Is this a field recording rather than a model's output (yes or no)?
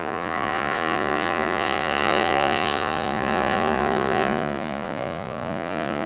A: no